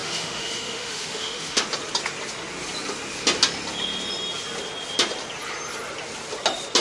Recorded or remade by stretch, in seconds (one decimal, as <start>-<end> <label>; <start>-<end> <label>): 0.0-1.6 remade; 1.6-6.8 recorded